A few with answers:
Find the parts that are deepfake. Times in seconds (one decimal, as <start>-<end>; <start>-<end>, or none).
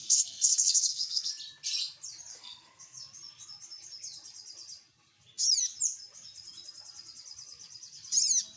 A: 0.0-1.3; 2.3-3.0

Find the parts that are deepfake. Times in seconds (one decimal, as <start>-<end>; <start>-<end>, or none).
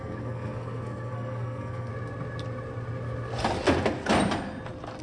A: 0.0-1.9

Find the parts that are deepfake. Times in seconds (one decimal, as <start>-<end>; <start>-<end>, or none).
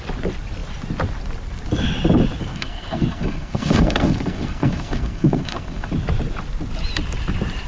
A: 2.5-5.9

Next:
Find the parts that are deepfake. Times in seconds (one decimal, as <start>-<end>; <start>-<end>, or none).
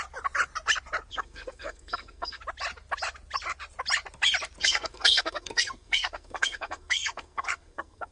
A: 1.1-2.4; 4.6-8.1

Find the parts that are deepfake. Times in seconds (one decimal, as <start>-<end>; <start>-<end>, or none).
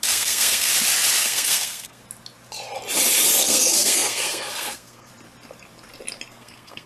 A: 0.0-0.7; 1.2-2.0; 3.4-5.1; 6.3-6.9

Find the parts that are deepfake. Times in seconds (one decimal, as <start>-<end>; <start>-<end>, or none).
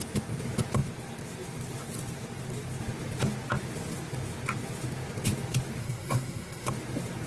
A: 5.8-6.7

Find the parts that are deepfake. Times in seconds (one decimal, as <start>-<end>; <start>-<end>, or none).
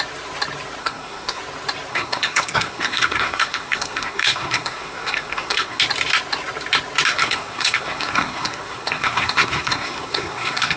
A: 0.8-1.4; 1.9-5.8; 7.1-10.8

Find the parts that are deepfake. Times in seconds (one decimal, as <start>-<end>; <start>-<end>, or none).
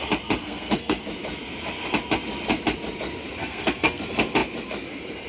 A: 0.4-1.0; 3.4-4.0